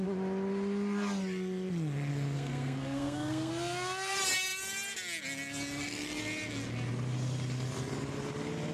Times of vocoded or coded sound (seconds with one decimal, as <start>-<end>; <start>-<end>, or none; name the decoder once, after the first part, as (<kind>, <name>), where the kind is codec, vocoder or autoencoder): 2.1-3.5 (codec, SNAC)